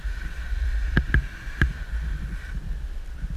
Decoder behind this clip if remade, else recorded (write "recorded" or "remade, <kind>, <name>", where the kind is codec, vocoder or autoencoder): recorded